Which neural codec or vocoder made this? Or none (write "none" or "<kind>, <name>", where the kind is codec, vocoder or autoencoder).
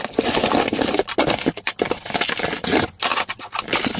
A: none